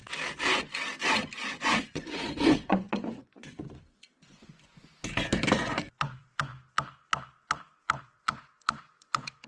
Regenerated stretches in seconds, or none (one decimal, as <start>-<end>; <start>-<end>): 1.4-5.0; 5.5-6.5; 8.0-9.5